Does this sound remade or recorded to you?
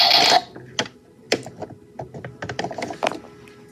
recorded